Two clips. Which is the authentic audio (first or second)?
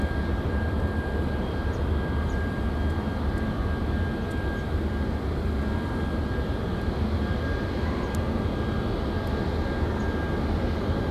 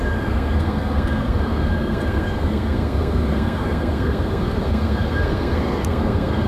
first